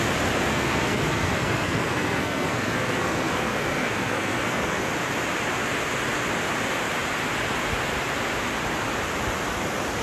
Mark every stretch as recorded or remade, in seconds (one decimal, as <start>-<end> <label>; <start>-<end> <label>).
0.0-0.5 recorded; 0.5-4.9 remade; 4.9-10.0 recorded